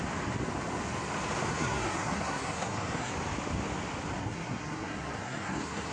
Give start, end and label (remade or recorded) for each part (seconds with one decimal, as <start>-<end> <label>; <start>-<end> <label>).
0.0-1.5 recorded; 1.5-3.1 remade; 3.1-4.2 recorded; 4.2-5.9 remade